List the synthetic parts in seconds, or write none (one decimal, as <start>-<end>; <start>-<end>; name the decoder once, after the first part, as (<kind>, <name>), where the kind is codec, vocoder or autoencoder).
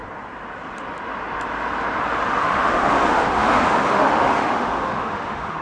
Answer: 2.4-5.6 (autoencoder, DAC-VAE)